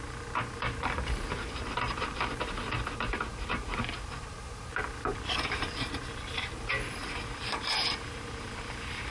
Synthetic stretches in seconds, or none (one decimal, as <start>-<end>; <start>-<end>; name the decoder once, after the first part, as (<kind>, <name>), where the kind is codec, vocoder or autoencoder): 0.0-9.1 (vocoder, BigVGAN v2)